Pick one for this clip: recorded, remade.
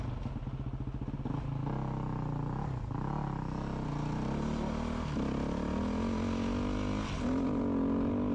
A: recorded